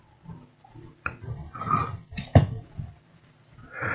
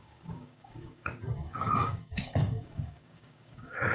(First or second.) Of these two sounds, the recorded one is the first